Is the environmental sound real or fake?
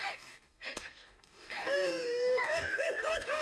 fake